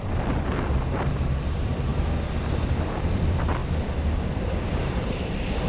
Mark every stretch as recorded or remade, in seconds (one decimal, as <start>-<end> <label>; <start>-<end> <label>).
0.0-1.9 remade; 1.9-2.8 recorded; 2.8-3.6 remade; 3.6-4.4 recorded; 4.4-5.7 remade